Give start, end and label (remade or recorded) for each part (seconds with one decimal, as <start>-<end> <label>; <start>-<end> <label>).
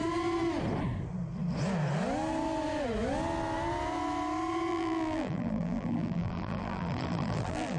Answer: 0.0-4.7 recorded; 4.7-7.8 remade